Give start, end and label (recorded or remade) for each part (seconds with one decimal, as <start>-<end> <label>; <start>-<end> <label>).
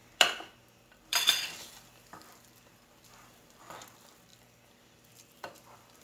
0.0-3.6 remade; 3.6-4.3 recorded; 4.3-6.0 remade